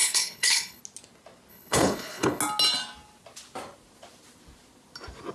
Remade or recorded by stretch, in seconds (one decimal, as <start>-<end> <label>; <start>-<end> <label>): 0.0-0.8 remade; 0.8-1.5 recorded; 1.5-2.4 remade; 2.4-5.3 recorded